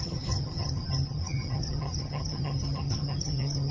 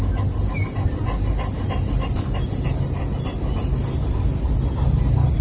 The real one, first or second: second